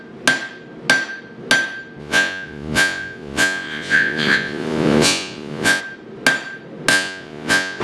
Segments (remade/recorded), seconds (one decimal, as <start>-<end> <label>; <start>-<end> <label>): 0.0-2.0 recorded; 2.0-5.8 remade; 5.8-6.9 recorded; 6.9-7.8 remade